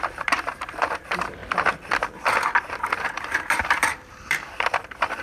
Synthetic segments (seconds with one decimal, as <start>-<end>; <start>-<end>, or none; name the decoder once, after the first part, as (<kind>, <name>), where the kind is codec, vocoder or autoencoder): 0.0-1.4 (vocoder, BigVGAN v2); 2.8-5.2